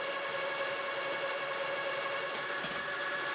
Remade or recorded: recorded